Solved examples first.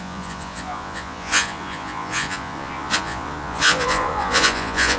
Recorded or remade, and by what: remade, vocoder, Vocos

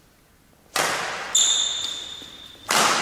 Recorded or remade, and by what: recorded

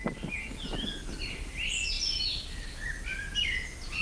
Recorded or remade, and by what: recorded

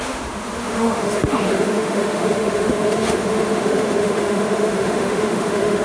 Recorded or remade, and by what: remade, autoencoder, DAC-VAE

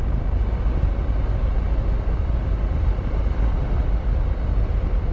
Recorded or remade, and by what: recorded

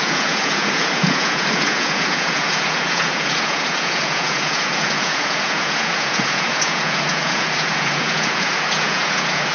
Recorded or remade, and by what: remade, vocoder, Vocos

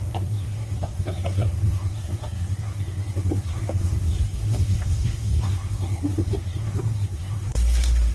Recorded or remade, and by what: remade, codec, SNAC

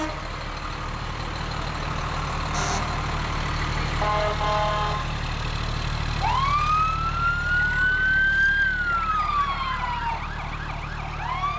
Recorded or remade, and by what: recorded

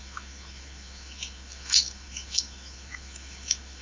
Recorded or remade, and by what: remade, autoencoder, DAC-VAE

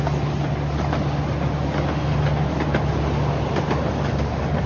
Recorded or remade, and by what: recorded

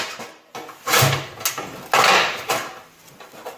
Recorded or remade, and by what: recorded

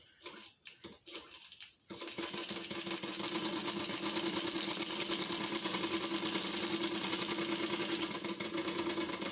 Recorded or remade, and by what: recorded